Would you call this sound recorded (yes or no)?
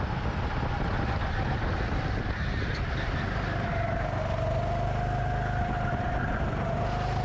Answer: yes